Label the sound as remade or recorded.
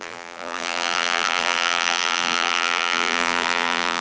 remade